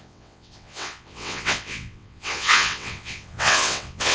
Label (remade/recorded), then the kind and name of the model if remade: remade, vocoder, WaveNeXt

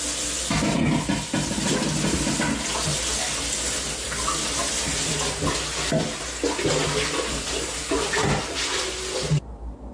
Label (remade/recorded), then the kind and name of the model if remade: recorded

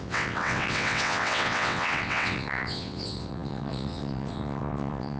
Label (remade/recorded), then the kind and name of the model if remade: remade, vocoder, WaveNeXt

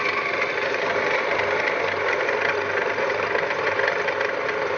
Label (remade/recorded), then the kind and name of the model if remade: recorded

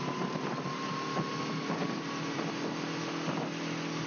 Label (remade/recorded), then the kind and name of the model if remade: recorded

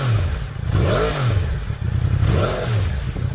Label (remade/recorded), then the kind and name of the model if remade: recorded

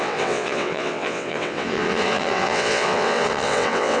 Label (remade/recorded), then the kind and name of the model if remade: remade, vocoder, WaveNeXt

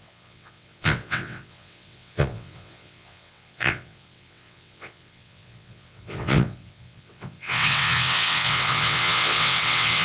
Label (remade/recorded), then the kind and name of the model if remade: remade, vocoder, WaveNeXt